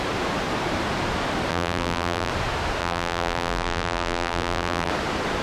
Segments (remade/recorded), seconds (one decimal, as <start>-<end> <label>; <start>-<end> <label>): 0.0-1.5 recorded; 1.5-2.3 remade; 2.3-2.8 recorded; 2.8-4.9 remade; 4.9-5.4 recorded